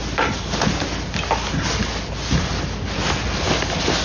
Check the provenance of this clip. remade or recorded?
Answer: recorded